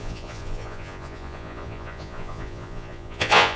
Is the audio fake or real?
fake